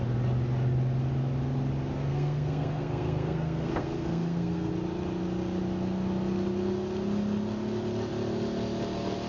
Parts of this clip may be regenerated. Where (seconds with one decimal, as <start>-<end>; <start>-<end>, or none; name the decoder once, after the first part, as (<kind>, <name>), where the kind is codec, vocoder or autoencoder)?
2.1-4.7 (codec, SNAC)